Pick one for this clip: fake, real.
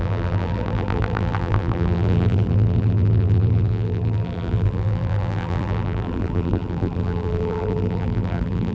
fake